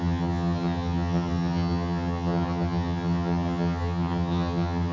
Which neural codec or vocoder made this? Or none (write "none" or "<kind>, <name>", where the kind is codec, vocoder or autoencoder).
vocoder, HiFi-GAN